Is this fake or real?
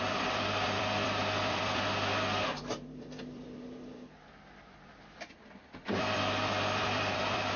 fake